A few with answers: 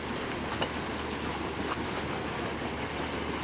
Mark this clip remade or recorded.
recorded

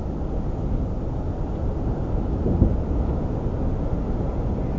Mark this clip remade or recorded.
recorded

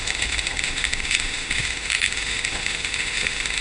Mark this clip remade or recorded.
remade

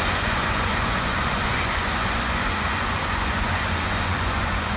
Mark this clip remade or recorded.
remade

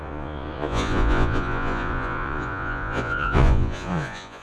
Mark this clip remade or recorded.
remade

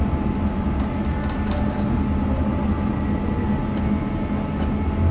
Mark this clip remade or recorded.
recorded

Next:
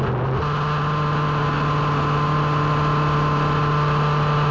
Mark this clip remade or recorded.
recorded